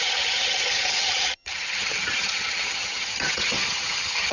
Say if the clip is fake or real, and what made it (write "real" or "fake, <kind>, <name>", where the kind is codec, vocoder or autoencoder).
fake, vocoder, HiFi-GAN